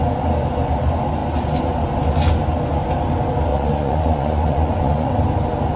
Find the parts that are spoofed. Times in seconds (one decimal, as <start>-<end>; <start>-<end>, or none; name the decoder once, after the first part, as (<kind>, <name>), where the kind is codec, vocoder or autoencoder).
3.5-5.1 (vocoder, Vocos)